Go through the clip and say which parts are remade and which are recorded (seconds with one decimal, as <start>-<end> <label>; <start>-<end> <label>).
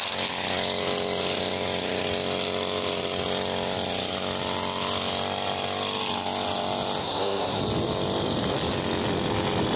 0.0-7.0 recorded; 7.0-7.6 remade; 7.6-9.8 recorded